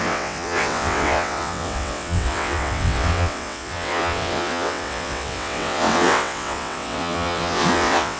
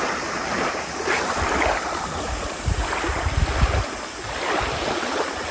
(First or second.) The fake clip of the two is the first